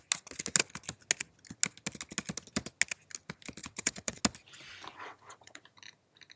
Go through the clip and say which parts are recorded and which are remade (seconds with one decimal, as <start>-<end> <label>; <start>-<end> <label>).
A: 0.0-3.6 recorded; 3.6-4.2 remade; 4.2-4.9 recorded; 4.9-5.6 remade; 5.6-6.4 recorded